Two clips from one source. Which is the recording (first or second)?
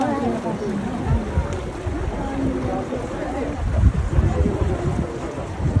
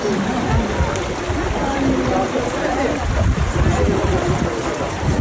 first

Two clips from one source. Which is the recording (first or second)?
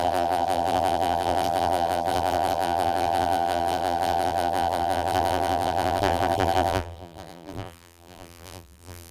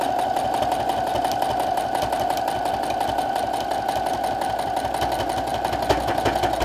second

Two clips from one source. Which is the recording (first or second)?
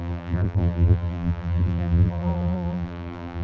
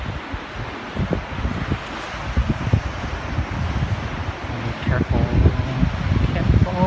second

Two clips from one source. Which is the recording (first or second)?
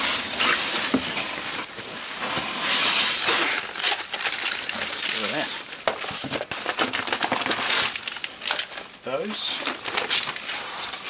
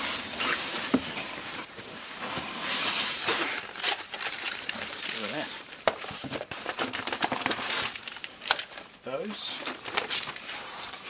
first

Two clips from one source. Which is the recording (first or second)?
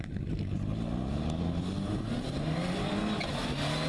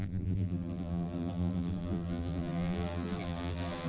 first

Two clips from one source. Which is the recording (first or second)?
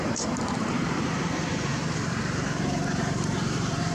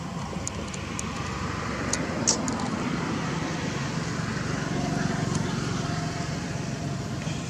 second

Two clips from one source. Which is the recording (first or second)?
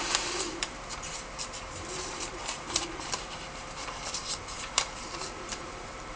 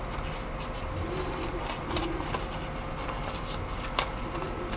second